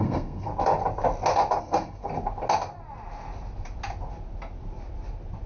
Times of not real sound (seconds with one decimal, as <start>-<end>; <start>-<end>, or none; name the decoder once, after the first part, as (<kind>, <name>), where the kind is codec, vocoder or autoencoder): 0.0-0.5 (codec, SNAC); 1.6-2.0